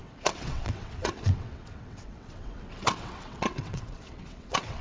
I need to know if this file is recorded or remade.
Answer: remade